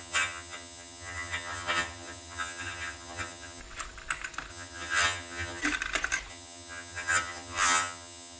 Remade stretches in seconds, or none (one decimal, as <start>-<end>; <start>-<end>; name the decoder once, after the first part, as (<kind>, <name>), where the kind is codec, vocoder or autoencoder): 0.0-3.6 (vocoder, HiFi-GAN); 4.5-5.6; 6.3-8.4